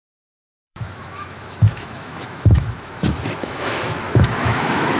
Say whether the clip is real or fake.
fake